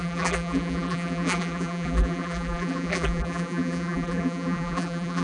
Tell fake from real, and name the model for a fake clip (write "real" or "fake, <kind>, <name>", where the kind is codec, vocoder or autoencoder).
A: fake, vocoder, BigVGAN v2